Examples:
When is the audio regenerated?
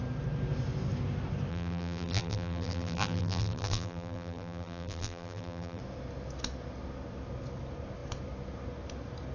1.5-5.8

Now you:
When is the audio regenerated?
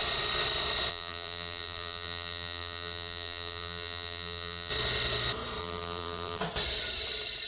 0.9-4.7; 5.6-6.4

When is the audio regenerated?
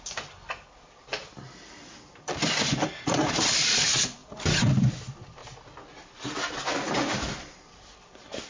0.0-5.4; 6.9-8.5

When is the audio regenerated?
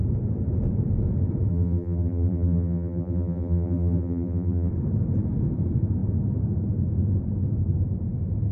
1.5-4.7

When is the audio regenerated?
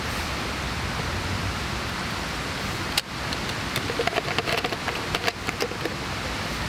1.4-2.5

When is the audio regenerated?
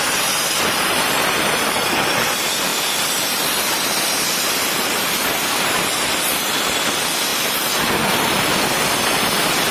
none